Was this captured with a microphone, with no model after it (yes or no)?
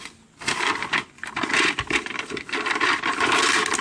yes